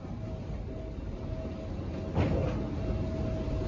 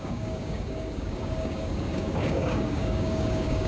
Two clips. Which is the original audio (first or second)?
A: first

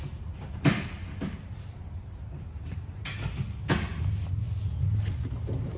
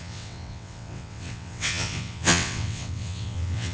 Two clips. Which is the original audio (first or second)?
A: first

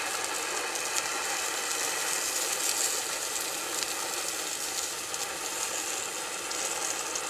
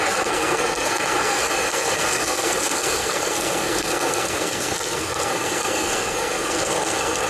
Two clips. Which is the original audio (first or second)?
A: first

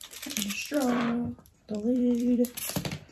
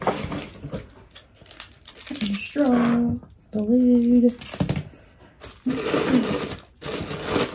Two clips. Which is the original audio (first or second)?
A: second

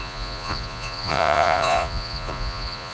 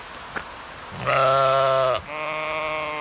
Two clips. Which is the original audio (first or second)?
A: second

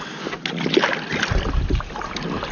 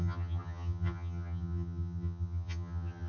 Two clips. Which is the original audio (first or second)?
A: first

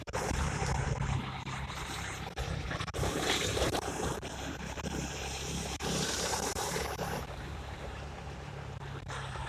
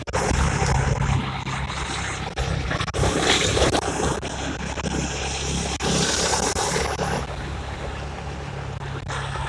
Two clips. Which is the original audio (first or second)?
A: second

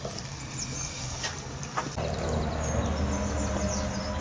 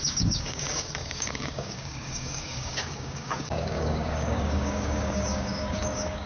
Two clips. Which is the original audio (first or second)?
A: first